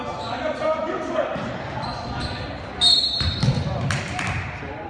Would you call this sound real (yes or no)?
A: yes